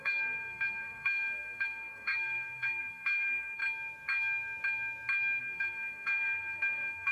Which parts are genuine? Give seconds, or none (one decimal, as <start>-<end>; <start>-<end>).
3.6-5.4